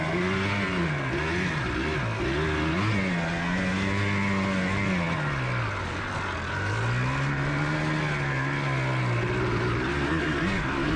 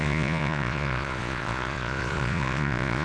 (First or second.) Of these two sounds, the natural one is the first